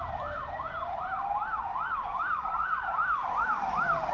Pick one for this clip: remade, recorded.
remade